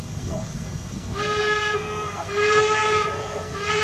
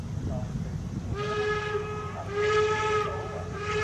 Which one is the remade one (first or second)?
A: first